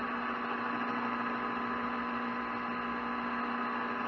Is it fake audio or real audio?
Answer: real